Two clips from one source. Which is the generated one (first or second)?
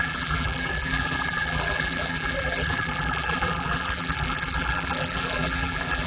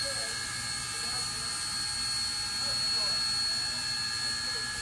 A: first